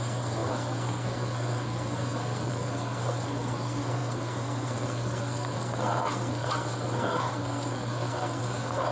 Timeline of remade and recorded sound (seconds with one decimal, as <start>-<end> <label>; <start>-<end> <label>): 0.0-8.9 remade